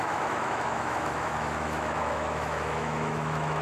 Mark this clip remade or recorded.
remade